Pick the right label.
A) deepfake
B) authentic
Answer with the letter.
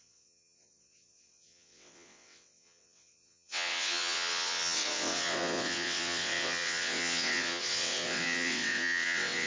A